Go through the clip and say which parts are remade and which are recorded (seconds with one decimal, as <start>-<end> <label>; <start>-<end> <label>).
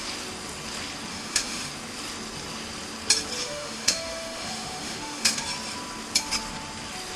0.0-1.1 recorded; 1.1-1.7 remade; 1.7-3.4 recorded; 3.4-5.4 remade; 5.4-7.2 recorded